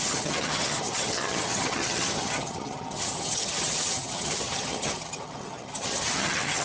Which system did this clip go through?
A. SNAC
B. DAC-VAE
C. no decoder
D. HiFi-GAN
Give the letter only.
D